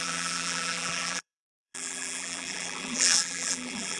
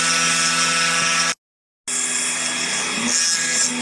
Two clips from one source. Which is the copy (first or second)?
first